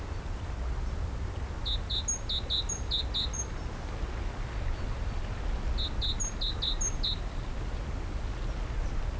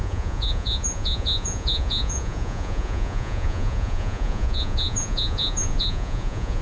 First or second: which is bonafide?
first